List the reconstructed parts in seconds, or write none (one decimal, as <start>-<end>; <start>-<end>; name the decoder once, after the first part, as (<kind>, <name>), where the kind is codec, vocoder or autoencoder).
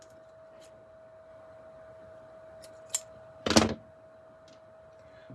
none